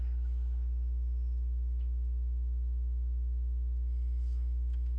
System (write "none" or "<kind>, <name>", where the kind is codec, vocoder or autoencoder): none